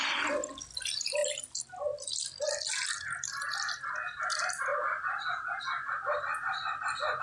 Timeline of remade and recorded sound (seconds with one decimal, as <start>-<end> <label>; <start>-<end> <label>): 0.0-7.2 recorded